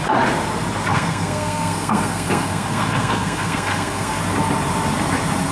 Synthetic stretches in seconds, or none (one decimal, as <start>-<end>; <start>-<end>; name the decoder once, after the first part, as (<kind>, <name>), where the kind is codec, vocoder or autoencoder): 0.9-4.2 (codec, SNAC)